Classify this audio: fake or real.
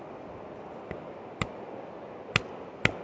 real